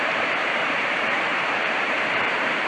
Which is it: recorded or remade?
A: remade